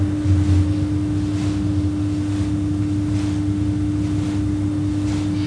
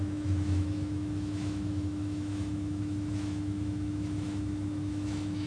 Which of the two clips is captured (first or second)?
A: first